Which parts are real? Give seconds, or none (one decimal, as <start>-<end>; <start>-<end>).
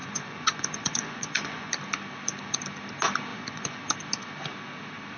1.7-3.3; 3.8-5.2